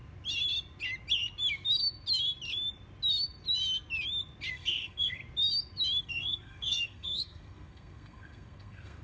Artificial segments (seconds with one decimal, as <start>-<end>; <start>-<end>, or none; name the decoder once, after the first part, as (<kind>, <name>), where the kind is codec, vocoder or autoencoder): 4.5-5.2 (codec, SNAC); 6.0-9.0

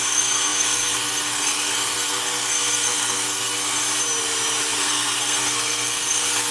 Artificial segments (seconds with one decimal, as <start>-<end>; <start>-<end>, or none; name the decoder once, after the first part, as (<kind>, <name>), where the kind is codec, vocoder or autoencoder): 0.0-3.8 (codec, SNAC); 4.8-6.5

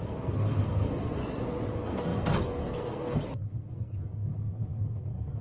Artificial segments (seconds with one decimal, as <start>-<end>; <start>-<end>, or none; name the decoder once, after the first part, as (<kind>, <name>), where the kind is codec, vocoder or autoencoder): 0.0-1.2 (codec, SNAC); 1.7-5.4

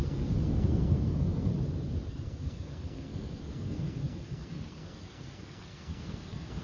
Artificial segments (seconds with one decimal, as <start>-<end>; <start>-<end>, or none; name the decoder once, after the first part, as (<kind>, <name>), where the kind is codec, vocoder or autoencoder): 0.0-1.5 (codec, SNAC); 2.1-6.6

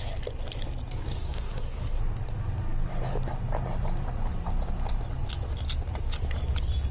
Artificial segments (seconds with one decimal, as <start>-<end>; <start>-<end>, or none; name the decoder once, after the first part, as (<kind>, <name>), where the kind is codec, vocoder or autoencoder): 1.1-2.0 (codec, SNAC)

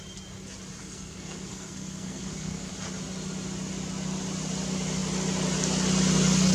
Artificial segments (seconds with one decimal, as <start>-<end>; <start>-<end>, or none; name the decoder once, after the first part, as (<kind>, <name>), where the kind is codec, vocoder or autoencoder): 0.8-2.7 (codec, SNAC)

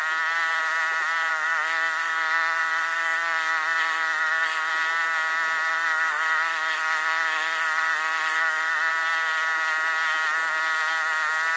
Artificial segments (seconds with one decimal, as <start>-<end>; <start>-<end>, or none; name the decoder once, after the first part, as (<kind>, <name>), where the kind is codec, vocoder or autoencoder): 1.3-4.7 (codec, SNAC); 5.7-8.9

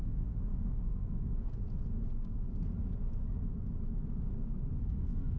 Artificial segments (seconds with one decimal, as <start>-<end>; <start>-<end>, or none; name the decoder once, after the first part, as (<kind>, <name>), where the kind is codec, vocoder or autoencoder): 0.0-1.6 (codec, SNAC); 4.8-5.4